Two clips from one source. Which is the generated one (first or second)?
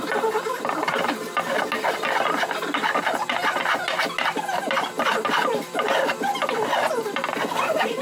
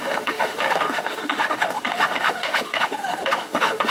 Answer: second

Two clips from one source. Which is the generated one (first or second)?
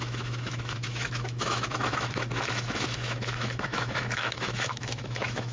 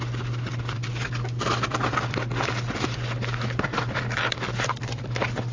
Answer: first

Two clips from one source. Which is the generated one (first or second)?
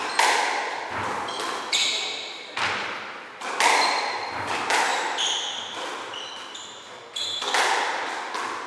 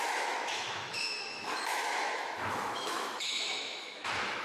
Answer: second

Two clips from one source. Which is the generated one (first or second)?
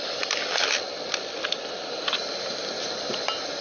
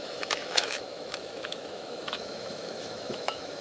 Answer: second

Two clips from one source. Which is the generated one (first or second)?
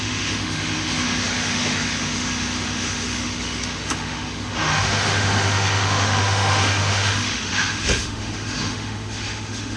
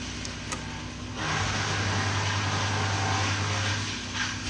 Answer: first